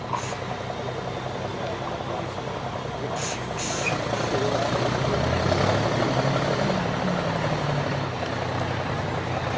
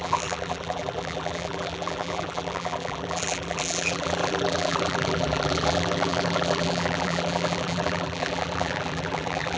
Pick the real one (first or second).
first